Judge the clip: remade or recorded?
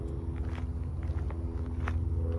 recorded